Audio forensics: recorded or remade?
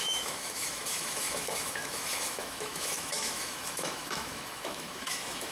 remade